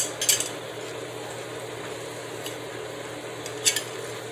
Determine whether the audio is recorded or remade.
recorded